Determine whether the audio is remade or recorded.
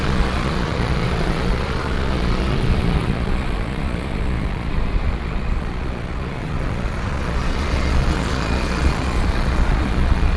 remade